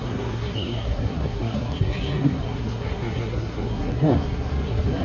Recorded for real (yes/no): no